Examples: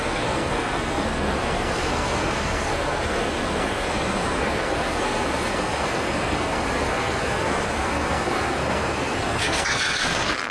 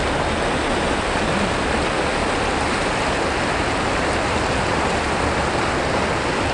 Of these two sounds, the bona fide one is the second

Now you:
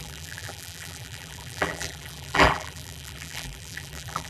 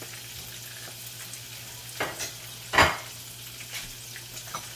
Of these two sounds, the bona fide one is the second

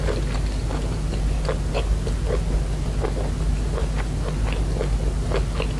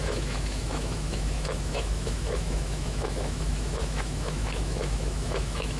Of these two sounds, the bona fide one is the first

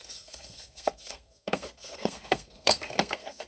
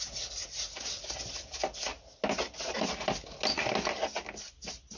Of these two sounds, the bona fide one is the second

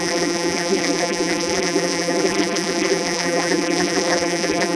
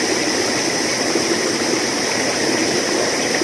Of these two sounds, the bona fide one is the second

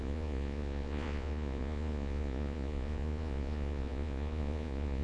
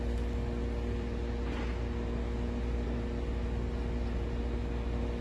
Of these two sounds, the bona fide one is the second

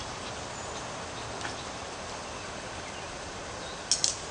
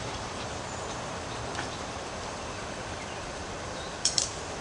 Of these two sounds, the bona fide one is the first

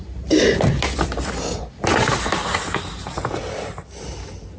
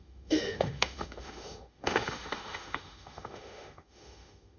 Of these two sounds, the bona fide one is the first